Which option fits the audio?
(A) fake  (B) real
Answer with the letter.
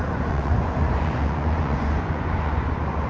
A